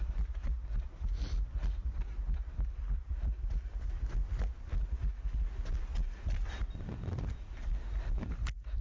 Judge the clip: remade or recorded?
recorded